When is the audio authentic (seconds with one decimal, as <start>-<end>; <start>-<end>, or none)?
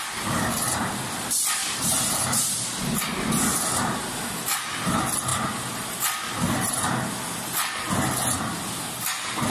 0.0-1.6; 2.8-9.5